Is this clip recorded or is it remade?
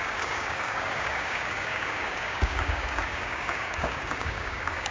remade